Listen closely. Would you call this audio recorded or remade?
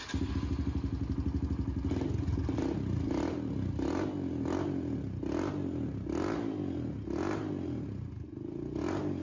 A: recorded